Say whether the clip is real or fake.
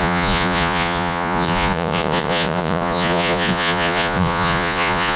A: fake